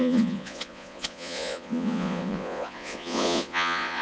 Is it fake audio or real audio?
fake